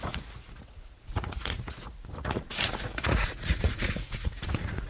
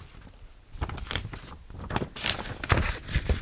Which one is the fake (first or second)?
first